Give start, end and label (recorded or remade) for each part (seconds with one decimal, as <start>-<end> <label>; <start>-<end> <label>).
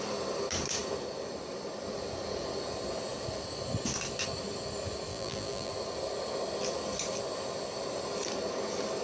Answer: 0.0-5.1 recorded; 5.1-5.7 remade; 5.7-9.0 recorded